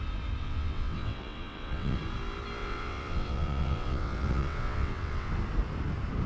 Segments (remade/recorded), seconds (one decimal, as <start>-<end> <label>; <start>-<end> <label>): 0.0-0.4 recorded; 0.4-2.0 remade; 2.0-2.6 recorded; 2.6-5.3 remade; 5.3-6.3 recorded

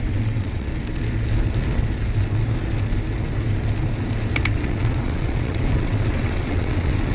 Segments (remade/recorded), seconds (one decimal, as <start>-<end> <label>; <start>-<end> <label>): 0.0-0.7 remade; 0.7-4.6 recorded; 4.6-7.1 remade

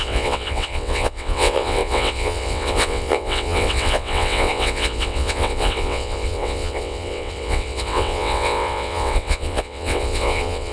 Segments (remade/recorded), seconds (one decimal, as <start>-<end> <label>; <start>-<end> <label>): 0.0-10.7 remade